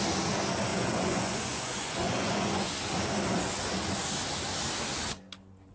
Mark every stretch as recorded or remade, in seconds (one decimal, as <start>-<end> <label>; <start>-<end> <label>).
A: 0.0-0.7 recorded; 0.7-2.7 remade; 2.7-5.7 recorded